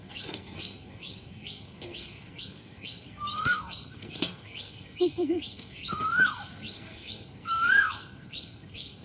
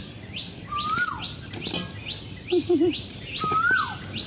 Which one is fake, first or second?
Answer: first